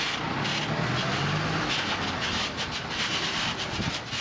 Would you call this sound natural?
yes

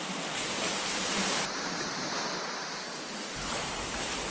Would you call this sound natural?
yes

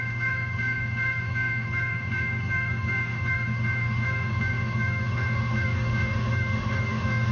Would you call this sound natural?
no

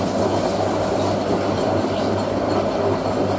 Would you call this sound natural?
yes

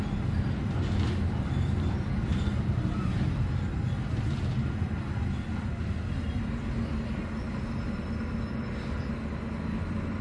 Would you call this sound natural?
yes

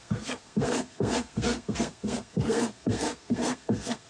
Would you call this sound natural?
no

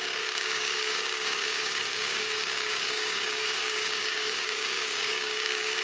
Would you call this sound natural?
no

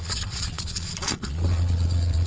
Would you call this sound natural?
no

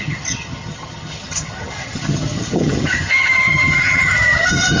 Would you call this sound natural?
no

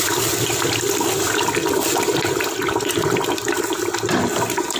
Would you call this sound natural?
no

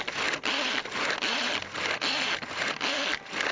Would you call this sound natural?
yes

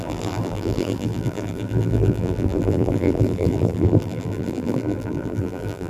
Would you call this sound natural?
no